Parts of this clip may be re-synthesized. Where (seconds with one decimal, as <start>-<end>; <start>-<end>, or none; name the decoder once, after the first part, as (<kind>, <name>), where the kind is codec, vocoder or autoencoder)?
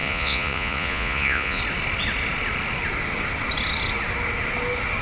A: 0.0-1.6 (vocoder, Vocos)